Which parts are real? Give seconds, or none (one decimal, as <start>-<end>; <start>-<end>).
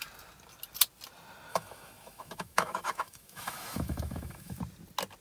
0.0-1.5; 4.6-5.2